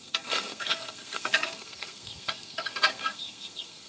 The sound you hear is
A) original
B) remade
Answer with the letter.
B